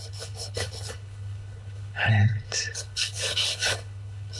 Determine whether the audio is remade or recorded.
remade